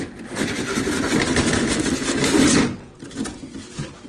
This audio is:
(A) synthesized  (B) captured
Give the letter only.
B